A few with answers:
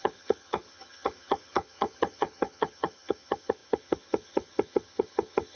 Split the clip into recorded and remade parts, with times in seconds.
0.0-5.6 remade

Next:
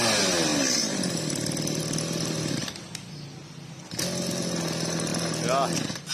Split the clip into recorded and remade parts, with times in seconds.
0.0-2.6 recorded; 2.6-3.8 remade; 3.8-6.1 recorded